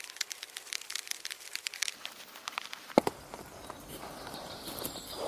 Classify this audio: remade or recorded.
remade